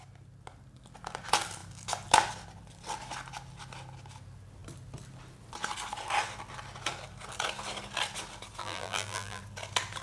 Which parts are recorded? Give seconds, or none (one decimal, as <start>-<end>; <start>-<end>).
0.0-8.6; 9.4-10.0